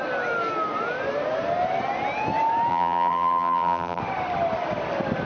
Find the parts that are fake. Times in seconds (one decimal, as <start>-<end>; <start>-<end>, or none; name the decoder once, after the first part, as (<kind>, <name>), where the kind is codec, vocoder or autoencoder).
2.7-4.0 (vocoder, BigVGAN v2)

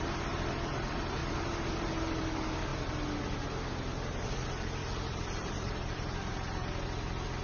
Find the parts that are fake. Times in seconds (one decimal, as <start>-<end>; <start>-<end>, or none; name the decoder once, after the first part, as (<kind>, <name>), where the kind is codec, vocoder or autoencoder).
1.2-1.9 (vocoder, BigVGAN v2); 4.8-6.2

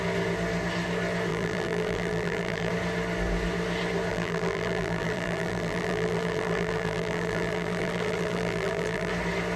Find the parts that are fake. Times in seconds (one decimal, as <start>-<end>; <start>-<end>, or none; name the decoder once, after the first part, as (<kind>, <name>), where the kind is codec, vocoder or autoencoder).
1.3-2.7 (vocoder, BigVGAN v2); 4.1-9.1

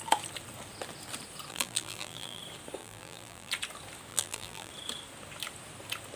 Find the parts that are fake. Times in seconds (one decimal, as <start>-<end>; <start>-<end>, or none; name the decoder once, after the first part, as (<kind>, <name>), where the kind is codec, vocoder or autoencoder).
1.5-2.4 (vocoder, BigVGAN v2); 2.8-3.5; 4.1-4.7

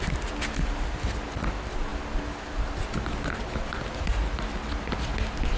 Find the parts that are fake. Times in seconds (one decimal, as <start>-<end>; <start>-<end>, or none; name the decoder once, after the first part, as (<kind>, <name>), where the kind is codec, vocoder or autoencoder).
none

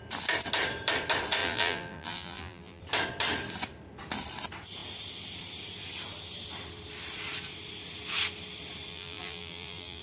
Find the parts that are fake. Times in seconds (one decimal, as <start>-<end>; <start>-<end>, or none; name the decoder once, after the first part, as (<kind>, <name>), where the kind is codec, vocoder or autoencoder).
1.4-2.8 (vocoder, BigVGAN v2); 8.9-10.0

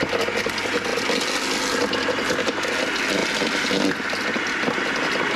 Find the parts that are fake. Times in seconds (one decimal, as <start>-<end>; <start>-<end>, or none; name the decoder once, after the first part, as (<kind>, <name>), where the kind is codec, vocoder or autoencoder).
3.2-4.5 (vocoder, BigVGAN v2)